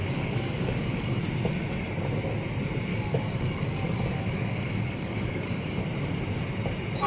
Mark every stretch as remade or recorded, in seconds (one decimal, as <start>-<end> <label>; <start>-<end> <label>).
0.0-1.2 remade; 1.2-2.9 recorded; 2.9-5.8 remade; 5.8-7.1 recorded